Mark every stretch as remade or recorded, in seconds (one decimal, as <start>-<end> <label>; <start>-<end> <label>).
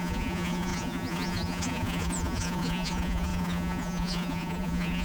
0.0-5.0 remade